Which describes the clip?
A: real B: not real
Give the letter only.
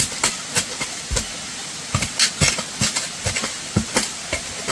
A